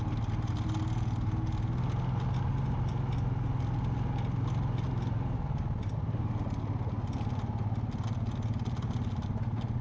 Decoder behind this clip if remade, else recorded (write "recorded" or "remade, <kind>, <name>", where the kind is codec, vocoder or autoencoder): recorded